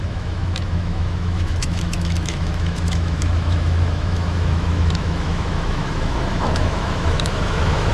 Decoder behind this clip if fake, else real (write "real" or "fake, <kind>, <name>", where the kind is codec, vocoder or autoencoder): fake, autoencoder, DAC-VAE